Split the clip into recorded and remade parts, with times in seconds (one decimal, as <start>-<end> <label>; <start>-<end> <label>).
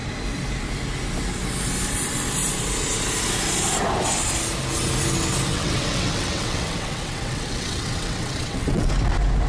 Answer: 0.0-5.5 recorded; 5.5-8.9 remade; 8.9-9.5 recorded